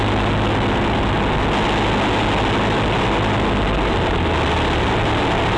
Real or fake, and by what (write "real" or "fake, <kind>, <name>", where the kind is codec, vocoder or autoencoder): real